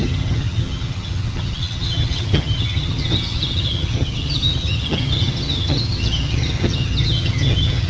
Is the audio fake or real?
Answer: fake